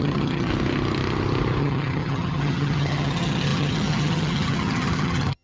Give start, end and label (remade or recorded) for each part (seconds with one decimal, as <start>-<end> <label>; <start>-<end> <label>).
0.0-0.5 remade; 0.5-1.6 recorded; 1.6-5.4 remade